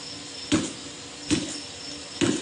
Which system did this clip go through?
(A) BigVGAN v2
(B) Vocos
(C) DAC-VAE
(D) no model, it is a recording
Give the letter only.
D